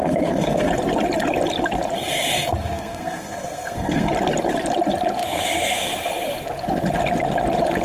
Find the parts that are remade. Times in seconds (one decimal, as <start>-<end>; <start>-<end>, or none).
0.0-0.7; 2.6-4.1